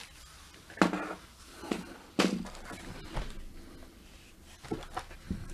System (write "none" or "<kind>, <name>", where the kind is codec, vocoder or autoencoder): none